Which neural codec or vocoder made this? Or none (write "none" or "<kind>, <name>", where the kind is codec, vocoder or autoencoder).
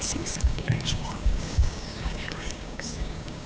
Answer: codec, DAC